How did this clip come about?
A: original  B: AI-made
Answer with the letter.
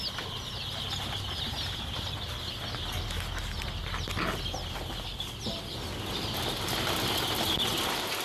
A